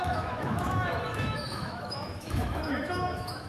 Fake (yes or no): yes